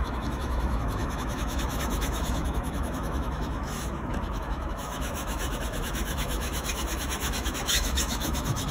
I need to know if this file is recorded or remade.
remade